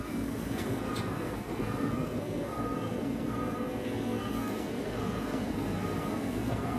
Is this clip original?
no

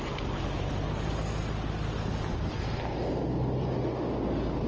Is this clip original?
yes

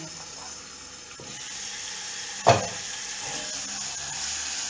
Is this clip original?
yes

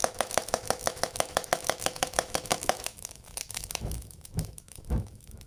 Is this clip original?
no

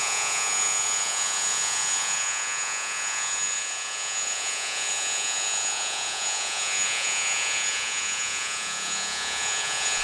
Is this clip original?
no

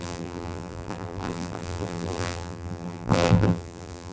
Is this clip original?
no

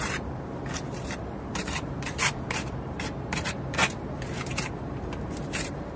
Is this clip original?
no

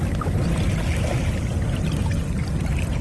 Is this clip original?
yes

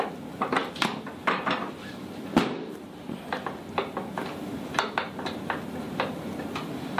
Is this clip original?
yes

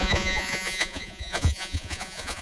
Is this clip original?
no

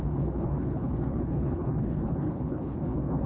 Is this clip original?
no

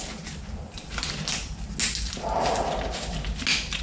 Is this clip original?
yes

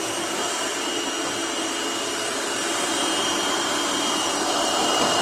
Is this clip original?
no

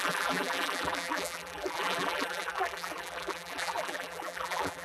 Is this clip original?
no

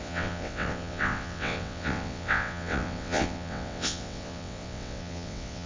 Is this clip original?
no